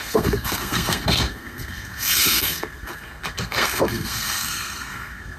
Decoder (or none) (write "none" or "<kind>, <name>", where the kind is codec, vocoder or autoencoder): codec, SNAC